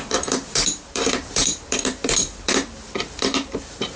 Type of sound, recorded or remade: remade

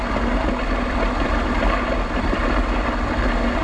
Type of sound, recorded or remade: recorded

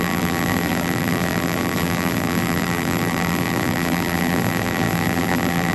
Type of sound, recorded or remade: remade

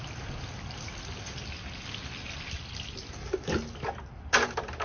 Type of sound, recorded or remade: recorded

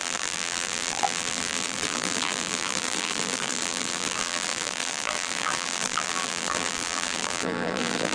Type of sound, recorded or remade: remade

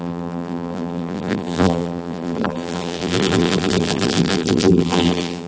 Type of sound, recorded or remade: remade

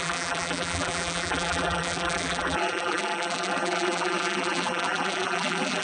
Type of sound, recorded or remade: remade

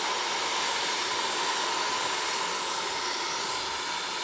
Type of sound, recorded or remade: recorded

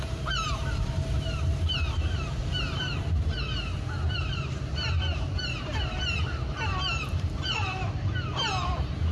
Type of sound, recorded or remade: remade